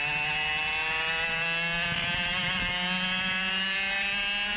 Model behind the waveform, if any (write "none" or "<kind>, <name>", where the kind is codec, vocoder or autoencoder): none